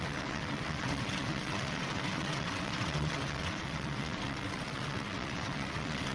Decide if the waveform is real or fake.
fake